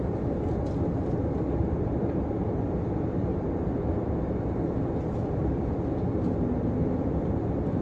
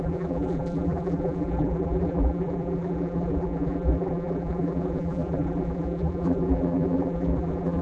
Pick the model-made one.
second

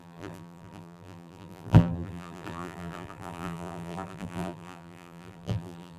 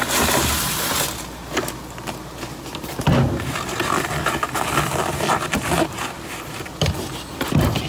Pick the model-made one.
first